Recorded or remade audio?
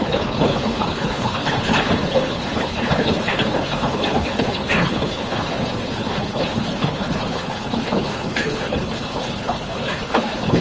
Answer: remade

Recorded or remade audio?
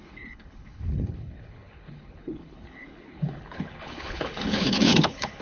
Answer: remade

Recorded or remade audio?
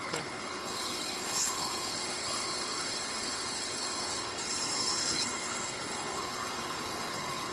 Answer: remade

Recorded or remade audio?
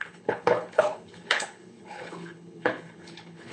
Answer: remade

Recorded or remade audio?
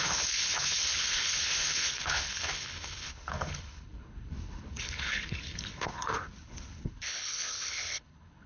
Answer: remade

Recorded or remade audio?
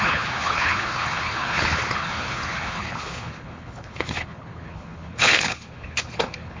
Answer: remade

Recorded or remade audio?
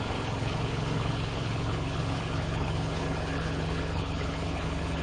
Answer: remade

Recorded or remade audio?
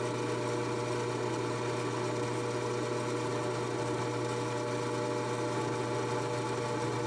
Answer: recorded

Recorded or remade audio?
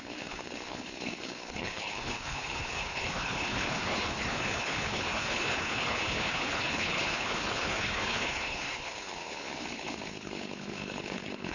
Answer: remade